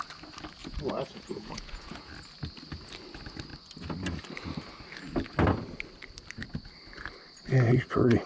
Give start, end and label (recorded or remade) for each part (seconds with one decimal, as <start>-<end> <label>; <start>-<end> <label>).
0.0-0.6 recorded; 0.6-2.1 remade; 2.1-8.3 recorded